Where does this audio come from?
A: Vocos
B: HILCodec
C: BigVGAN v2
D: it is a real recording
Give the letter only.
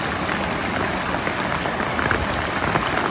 D